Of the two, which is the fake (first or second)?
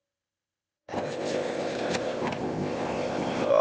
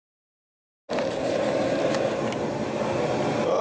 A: first